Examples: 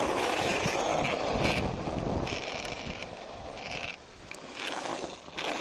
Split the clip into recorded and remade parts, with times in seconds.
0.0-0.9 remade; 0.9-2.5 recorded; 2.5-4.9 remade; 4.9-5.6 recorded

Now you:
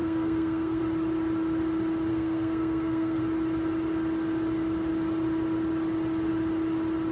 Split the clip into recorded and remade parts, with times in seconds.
0.0-0.8 remade; 0.8-2.1 recorded; 2.1-3.2 remade; 3.2-7.1 recorded

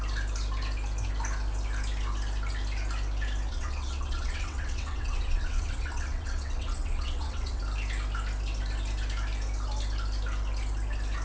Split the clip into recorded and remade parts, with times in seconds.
0.0-3.5 recorded; 3.5-7.6 remade; 7.6-11.2 recorded

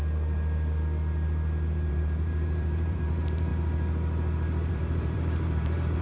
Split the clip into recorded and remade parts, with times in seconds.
0.0-1.9 recorded; 1.9-3.5 remade; 3.5-4.7 recorded; 4.7-6.0 remade

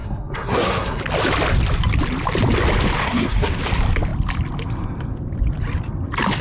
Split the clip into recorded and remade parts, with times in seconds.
0.0-1.0 remade; 1.0-3.0 recorded; 3.0-3.6 remade; 3.6-6.4 recorded